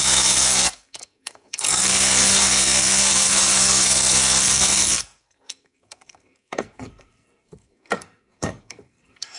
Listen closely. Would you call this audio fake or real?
fake